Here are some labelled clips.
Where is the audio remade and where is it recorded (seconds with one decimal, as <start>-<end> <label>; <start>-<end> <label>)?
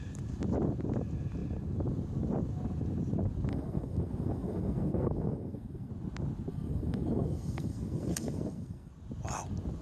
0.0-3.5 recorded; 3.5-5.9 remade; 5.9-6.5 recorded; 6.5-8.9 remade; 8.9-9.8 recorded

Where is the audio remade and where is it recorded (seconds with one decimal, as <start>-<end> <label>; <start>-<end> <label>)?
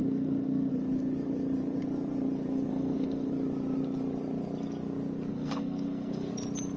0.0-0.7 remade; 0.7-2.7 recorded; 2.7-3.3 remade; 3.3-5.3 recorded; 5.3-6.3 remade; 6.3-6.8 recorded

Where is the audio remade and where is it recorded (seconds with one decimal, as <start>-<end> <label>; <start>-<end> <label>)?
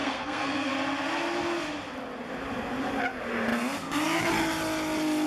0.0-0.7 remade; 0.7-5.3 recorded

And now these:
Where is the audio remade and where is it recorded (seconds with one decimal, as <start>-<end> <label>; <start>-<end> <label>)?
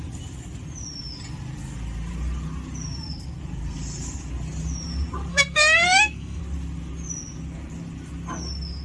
0.0-5.3 recorded; 5.3-6.4 remade; 6.4-8.8 recorded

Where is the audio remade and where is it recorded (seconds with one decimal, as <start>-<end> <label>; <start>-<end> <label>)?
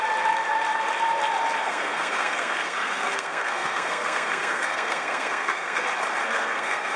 0.0-1.6 recorded; 1.6-5.8 remade; 5.8-6.2 recorded; 6.2-7.0 remade